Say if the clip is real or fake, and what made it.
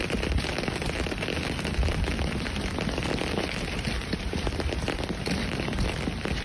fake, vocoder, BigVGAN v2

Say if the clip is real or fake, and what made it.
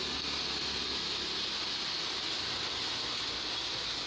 real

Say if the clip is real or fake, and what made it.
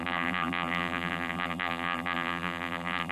fake, vocoder, BigVGAN v2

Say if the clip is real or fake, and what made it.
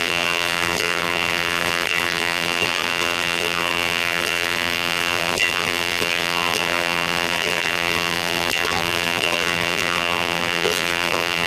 fake, vocoder, BigVGAN v2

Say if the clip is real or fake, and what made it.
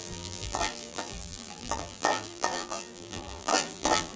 fake, vocoder, BigVGAN v2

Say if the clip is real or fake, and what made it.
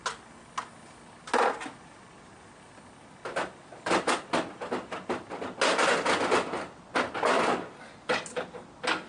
real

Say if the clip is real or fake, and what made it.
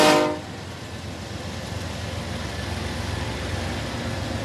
real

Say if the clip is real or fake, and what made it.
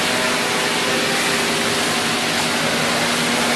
real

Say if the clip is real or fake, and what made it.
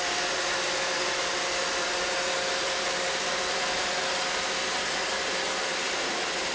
fake, vocoder, BigVGAN v2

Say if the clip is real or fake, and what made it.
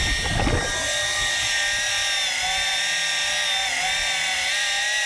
real